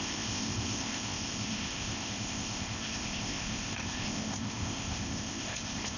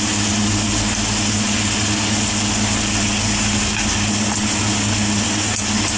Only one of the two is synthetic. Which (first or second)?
first